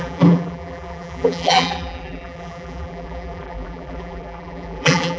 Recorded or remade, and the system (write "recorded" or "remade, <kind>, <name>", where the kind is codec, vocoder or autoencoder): remade, vocoder, BigVGAN v2